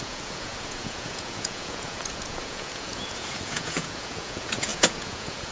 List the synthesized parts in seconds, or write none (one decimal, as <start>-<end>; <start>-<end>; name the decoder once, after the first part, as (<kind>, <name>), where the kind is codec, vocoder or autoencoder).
0.0-5.5 (vocoder, Vocos)